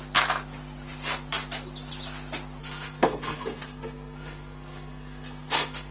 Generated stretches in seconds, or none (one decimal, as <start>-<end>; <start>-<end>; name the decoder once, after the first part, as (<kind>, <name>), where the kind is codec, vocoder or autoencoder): 2.6-5.9 (codec, SNAC)